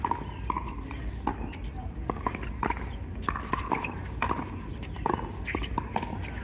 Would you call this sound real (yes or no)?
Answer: yes